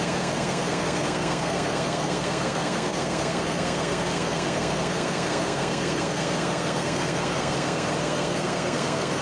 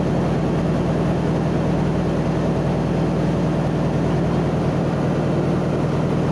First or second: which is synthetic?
first